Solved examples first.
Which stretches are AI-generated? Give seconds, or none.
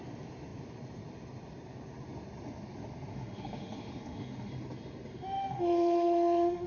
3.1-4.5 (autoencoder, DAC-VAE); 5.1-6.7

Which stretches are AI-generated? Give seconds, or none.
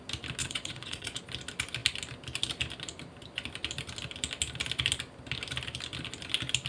0.4-1.2 (vocoder, Vocos)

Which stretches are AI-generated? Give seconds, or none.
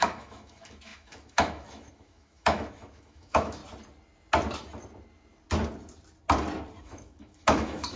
0.0-3.6 (autoencoder, DAC-VAE); 6.8-8.0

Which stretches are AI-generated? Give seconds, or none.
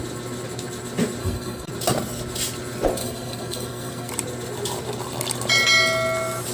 1.2-1.7 (codec, SNAC); 3.0-4.1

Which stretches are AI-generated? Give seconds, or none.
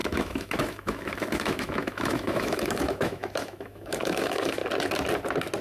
0.0-4.6 (autoencoder, DAC-VAE)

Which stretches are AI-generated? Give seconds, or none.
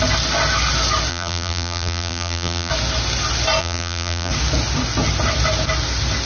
1.1-2.7 (vocoder, BigVGAN v2); 3.6-4.3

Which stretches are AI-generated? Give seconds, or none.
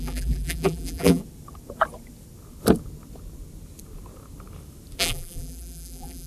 0.0-1.2 (vocoder, BigVGAN v2); 5.0-6.3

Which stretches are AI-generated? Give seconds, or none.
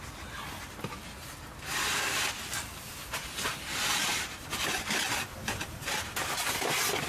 none